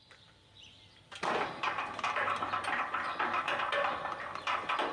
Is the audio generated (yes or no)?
yes